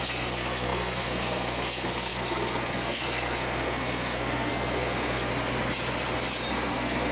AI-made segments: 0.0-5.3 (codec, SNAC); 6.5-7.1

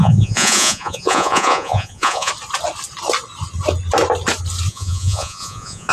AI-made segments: 0.0-2.3 (vocoder, Vocos); 4.7-5.9

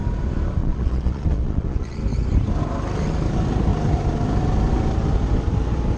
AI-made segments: 0.6-2.0 (vocoder, Vocos)

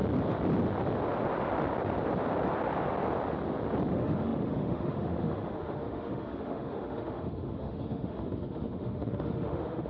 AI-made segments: 3.9-9.9 (autoencoder, DAC-VAE)